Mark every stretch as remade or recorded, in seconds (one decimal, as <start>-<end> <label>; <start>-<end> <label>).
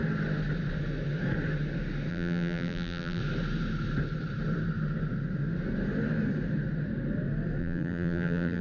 0.0-2.1 recorded; 2.1-3.2 remade; 3.2-7.6 recorded; 7.6-8.6 remade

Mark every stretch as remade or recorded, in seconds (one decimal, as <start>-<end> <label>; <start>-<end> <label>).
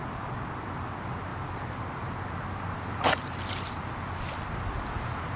0.0-5.4 recorded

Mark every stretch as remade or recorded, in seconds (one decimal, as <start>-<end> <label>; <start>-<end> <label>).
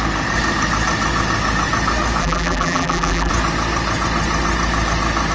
0.0-2.2 recorded; 2.2-3.3 remade; 3.3-5.3 recorded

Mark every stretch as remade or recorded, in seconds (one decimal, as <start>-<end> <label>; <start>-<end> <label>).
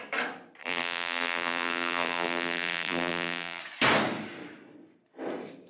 0.0-0.6 recorded; 0.6-3.6 remade; 3.6-5.7 recorded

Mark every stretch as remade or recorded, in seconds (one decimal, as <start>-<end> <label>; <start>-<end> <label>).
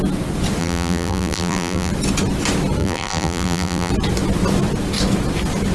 0.0-0.6 recorded; 0.6-1.9 remade; 1.9-2.8 recorded; 2.8-3.9 remade; 3.9-5.7 recorded